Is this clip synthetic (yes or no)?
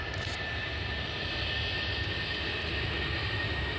no